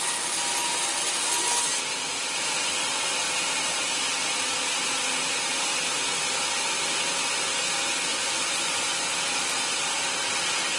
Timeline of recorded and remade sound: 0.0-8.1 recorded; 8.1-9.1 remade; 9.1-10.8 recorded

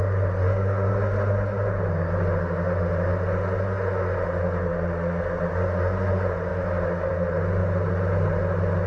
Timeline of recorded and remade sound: 0.0-8.9 recorded